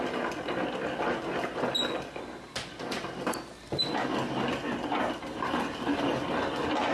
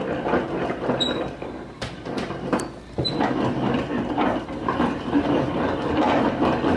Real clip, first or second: first